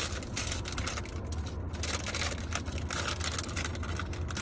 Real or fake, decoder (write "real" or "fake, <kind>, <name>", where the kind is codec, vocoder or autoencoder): real